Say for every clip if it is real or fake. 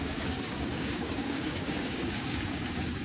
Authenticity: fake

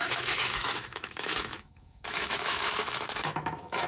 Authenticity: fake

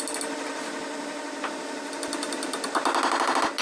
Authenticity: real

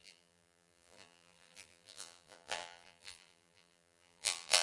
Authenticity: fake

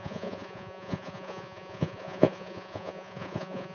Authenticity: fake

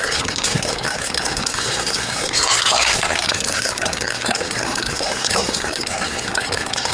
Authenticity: fake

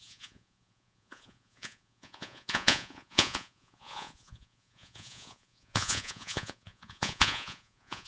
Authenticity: fake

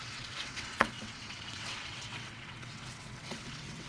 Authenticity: fake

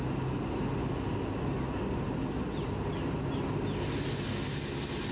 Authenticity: real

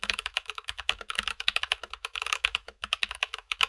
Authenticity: fake